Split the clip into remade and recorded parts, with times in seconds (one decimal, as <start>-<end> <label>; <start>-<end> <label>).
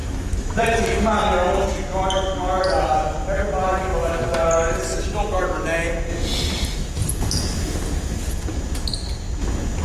0.0-0.6 remade; 0.6-9.8 recorded